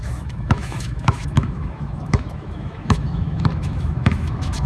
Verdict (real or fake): fake